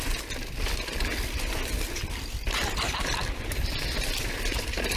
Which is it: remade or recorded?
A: remade